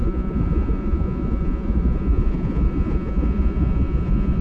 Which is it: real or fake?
fake